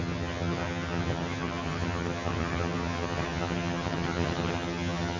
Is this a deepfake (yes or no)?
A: yes